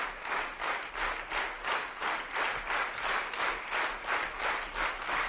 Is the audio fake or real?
real